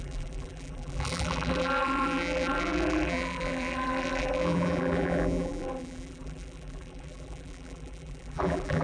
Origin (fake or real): fake